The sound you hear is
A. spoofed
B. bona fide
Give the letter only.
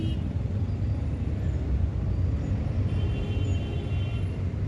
B